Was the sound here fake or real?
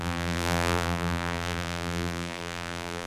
fake